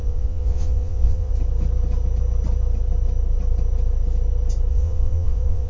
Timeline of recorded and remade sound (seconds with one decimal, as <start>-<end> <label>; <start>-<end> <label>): 0.0-1.3 remade; 1.3-4.7 recorded; 4.7-5.7 remade